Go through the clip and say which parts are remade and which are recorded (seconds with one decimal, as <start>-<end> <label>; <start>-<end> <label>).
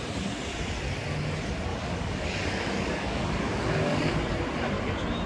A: 0.0-1.7 recorded; 1.7-4.2 remade; 4.2-5.3 recorded